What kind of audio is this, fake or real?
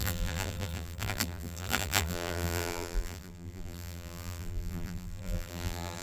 fake